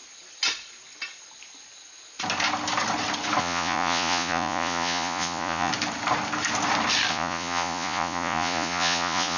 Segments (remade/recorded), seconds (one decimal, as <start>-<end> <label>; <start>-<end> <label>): 0.0-3.4 recorded; 3.4-5.7 remade; 5.7-7.1 recorded; 7.1-9.4 remade